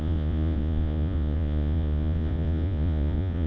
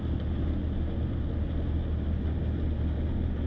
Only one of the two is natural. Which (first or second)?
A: second